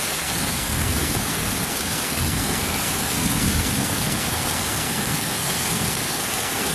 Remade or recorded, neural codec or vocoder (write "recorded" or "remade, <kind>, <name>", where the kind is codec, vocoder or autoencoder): remade, codec, SNAC